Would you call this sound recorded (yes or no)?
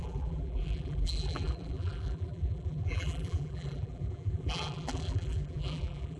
no